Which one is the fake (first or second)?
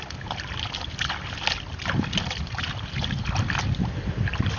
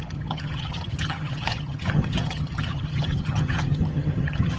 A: second